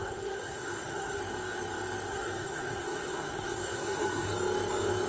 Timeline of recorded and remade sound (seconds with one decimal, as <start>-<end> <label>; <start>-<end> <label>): 0.0-1.2 remade; 1.2-2.1 recorded; 2.1-4.3 remade; 4.3-5.1 recorded